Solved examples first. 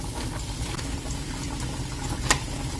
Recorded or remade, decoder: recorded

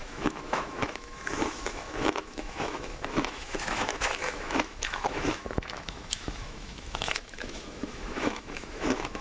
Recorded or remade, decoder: remade, autoencoder, DAC-VAE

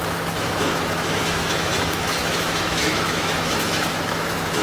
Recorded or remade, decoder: remade, autoencoder, DAC-VAE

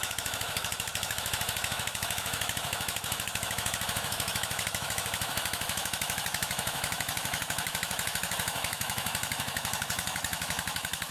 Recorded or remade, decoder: remade, autoencoder, DAC-VAE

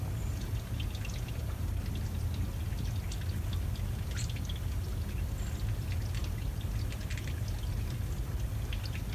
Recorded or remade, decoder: recorded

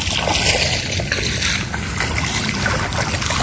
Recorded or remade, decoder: recorded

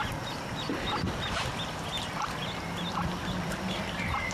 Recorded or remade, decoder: recorded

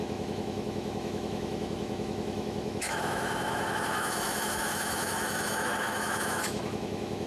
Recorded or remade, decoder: remade, autoencoder, DAC-VAE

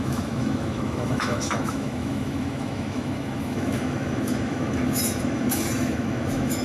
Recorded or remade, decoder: remade, autoencoder, DAC-VAE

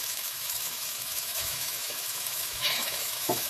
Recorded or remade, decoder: remade, autoencoder, DAC-VAE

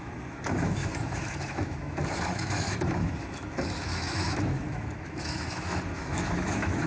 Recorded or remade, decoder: remade, autoencoder, DAC-VAE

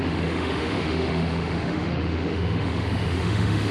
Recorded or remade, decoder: remade, autoencoder, DAC-VAE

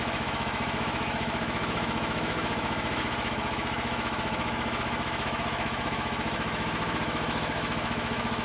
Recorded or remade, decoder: remade, autoencoder, DAC-VAE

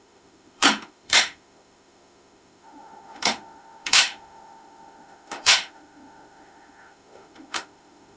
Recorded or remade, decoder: remade, autoencoder, DAC-VAE